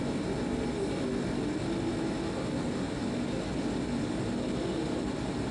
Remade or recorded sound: recorded